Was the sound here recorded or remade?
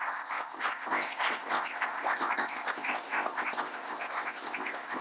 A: remade